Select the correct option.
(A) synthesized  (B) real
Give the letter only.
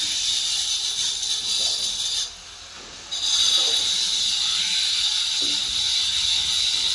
B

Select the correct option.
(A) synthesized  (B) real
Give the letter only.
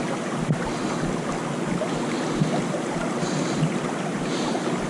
B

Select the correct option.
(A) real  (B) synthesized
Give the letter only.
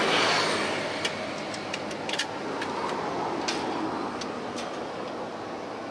A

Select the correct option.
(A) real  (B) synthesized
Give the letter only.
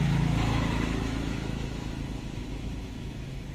B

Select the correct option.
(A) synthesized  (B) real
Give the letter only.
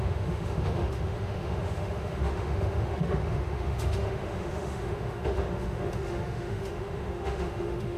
A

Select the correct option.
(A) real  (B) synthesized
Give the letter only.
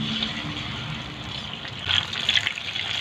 A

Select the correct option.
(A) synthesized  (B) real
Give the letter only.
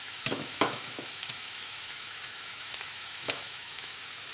A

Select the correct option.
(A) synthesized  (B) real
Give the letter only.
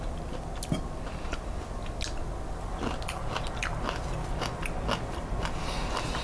B